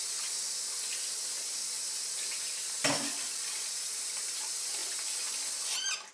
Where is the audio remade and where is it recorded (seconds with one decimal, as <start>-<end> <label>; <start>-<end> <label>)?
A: 0.0-6.1 recorded

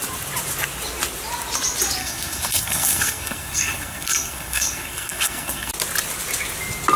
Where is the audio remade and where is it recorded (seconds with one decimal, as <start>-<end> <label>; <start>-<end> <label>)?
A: 0.0-2.0 recorded; 2.0-5.7 remade; 5.7-7.0 recorded